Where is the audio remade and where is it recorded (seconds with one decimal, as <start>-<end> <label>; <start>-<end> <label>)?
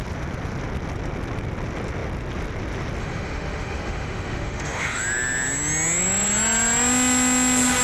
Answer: 0.0-3.0 recorded; 3.0-5.0 remade; 5.0-7.8 recorded